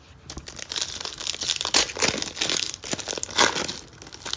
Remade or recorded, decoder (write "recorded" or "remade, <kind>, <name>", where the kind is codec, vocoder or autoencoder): recorded